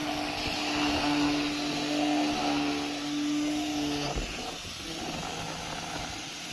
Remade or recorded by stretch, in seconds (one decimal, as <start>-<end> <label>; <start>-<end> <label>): 0.0-6.5 recorded

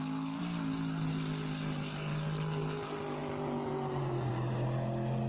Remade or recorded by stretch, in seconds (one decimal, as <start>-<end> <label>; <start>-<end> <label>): 0.0-5.3 recorded